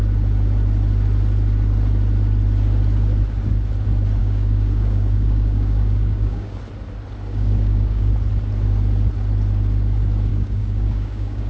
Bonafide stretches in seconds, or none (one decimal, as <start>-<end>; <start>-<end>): 0.0-4.2; 6.6-7.3; 8.1-10.3